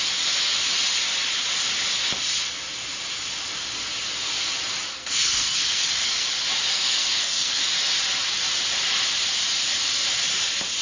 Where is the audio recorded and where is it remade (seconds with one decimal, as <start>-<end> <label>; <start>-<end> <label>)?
0.0-4.9 recorded; 4.9-6.3 remade; 6.3-6.7 recorded; 6.7-7.6 remade; 7.6-10.8 recorded